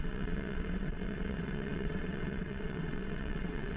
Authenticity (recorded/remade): remade